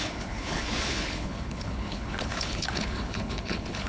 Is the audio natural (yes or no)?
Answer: no